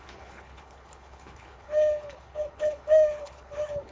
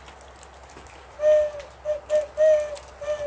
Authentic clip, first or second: second